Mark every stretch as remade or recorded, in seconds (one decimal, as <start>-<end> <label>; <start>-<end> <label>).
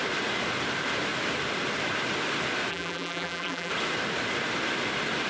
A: 0.0-2.7 recorded; 2.7-3.7 remade; 3.7-5.3 recorded